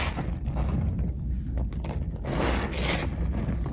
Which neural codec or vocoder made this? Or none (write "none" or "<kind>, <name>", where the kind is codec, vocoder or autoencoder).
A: none